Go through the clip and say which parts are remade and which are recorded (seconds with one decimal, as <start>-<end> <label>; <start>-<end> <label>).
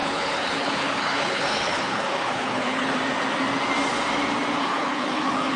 0.0-2.9 remade; 2.9-4.6 recorded; 4.6-5.6 remade